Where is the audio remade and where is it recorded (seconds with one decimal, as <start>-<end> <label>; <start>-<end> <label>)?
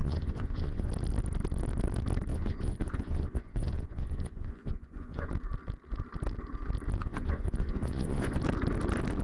0.0-0.9 remade; 0.9-2.3 recorded; 2.3-5.3 remade; 5.3-7.0 recorded; 7.0-8.4 remade; 8.4-9.2 recorded